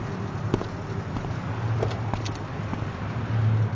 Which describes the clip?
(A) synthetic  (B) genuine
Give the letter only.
B